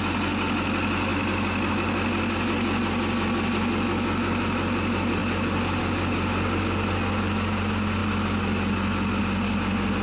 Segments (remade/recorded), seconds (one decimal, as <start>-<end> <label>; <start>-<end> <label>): 0.0-1.1 recorded; 1.1-1.7 remade; 1.7-10.0 recorded